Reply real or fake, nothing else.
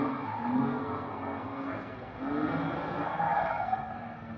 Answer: fake